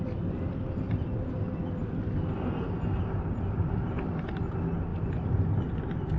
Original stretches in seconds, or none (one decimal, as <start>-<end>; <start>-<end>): 0.0-6.2